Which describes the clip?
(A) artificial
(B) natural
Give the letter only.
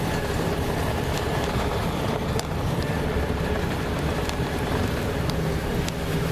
A